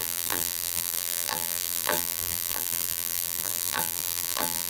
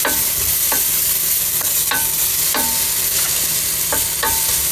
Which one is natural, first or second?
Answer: second